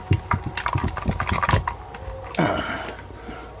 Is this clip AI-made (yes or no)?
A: no